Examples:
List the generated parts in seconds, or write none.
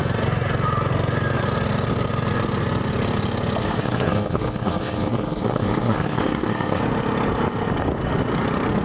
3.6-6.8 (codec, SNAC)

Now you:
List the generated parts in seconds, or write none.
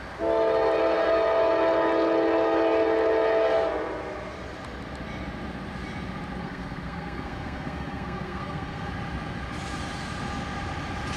6.4-8.9 (codec, SNAC)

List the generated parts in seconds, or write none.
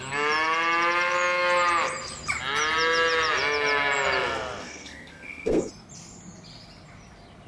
4.6-5.7 (codec, SNAC)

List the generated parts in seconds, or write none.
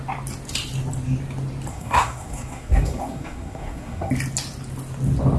1.7-4.1 (codec, SNAC)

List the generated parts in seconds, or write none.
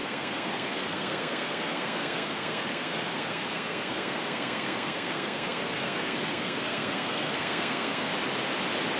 0.0-8.1 (codec, SNAC)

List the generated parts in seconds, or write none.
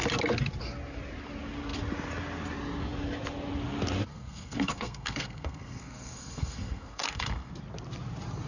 4.1-7.5 (codec, SNAC)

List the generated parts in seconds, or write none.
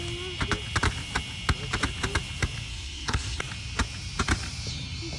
2.7-3.4 (codec, SNAC)